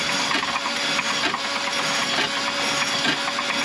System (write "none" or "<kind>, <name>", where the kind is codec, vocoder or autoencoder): none